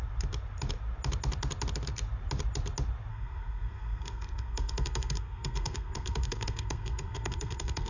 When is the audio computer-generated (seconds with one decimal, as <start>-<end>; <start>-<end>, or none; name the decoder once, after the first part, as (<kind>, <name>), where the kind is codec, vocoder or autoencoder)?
3.1-7.9 (codec, SNAC)